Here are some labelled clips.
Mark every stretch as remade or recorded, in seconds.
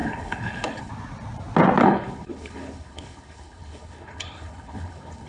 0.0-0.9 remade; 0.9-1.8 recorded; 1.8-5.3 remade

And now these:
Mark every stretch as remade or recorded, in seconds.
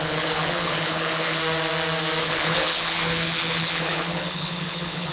0.0-1.4 remade; 1.4-2.2 recorded; 2.2-5.1 remade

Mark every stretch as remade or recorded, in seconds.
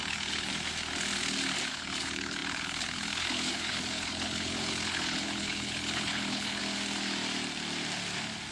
0.0-0.5 remade; 0.5-1.7 recorded; 1.7-6.6 remade; 6.6-8.5 recorded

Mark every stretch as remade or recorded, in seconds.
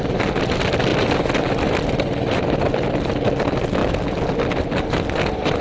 0.0-5.6 recorded